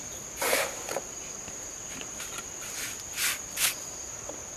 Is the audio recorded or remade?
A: recorded